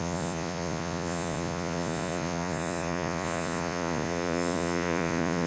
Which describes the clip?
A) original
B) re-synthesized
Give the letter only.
B